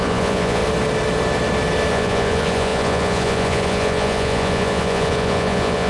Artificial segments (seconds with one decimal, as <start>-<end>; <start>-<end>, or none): 0.0-0.6; 1.9-5.9